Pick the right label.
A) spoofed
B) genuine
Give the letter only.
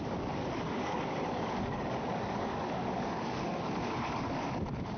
A